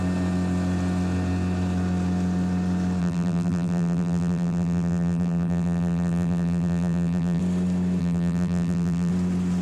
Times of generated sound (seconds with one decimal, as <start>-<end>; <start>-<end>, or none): 3.0-7.4; 8.0-9.1